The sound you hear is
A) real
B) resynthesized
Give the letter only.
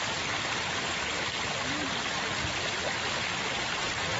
A